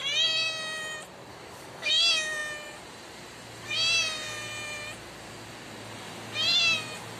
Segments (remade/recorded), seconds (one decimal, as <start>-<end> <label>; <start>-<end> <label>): 0.0-1.3 recorded; 1.3-1.9 remade; 1.9-7.2 recorded